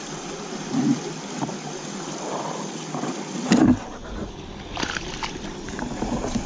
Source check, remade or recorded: recorded